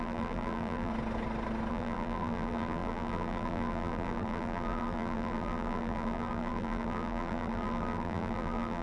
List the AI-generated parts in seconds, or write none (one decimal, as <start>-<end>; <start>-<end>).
0.0-0.9; 1.7-8.8

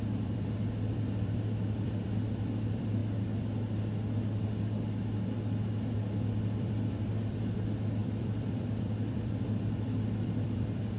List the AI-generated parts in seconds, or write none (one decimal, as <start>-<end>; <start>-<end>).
0.0-3.0; 5.9-11.0

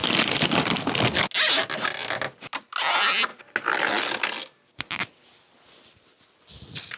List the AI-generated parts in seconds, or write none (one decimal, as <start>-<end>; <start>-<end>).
none

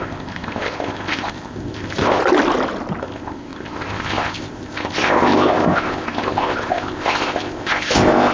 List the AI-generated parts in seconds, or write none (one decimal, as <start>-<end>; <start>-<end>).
0.0-2.2; 3.0-8.3

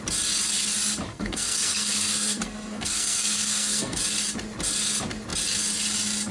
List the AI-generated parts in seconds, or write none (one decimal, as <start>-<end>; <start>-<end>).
1.1-4.0

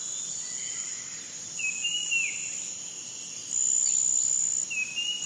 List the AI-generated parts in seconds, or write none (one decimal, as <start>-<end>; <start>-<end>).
0.9-1.6; 3.4-4.5

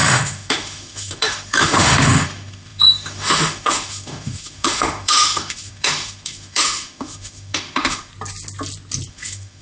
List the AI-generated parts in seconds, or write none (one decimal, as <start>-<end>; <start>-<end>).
0.0-8.1; 9.1-9.6

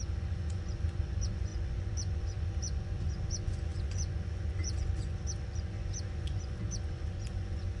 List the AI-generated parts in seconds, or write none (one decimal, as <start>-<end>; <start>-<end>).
0.0-7.8